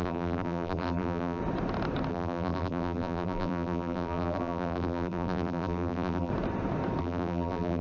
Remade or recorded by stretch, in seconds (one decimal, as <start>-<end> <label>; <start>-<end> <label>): 0.0-1.4 remade; 1.4-2.1 recorded; 2.1-6.3 remade; 6.3-7.0 recorded; 7.0-7.8 remade